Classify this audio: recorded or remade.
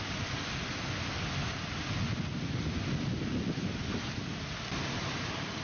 recorded